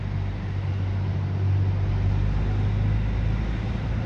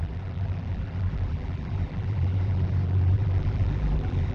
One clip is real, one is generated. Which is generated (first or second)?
second